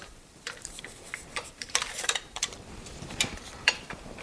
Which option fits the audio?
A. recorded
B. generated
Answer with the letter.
B